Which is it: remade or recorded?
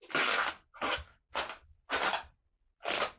recorded